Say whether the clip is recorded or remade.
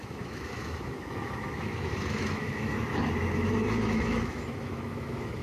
remade